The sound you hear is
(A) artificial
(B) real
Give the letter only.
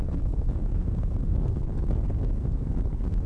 A